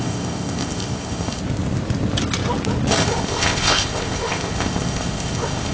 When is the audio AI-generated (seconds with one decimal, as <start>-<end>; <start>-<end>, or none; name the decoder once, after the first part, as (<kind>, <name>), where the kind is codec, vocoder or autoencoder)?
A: 0.0-1.4 (codec, ZipCodec); 2.9-5.7